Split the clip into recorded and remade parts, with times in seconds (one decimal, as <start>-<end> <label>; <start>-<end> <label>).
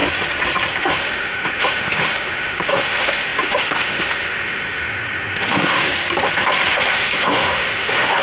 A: 0.0-0.7 recorded; 0.7-5.9 remade; 5.9-6.7 recorded; 6.7-8.2 remade